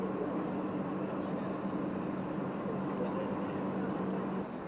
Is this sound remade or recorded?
recorded